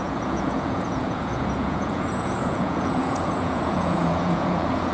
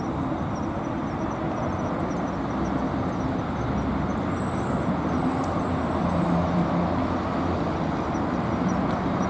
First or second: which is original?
second